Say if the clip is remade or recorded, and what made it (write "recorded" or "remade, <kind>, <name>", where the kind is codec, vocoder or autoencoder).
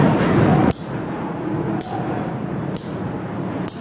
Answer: remade, vocoder, Vocos